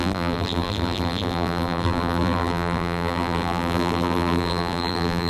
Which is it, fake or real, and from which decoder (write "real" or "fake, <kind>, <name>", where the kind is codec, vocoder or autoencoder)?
fake, vocoder, BigVGAN v2